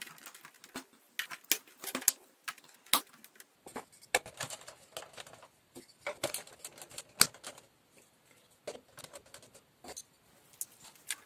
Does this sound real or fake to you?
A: real